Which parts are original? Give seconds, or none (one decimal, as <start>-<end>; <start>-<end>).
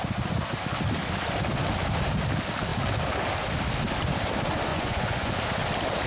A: 0.0-4.7; 5.3-6.1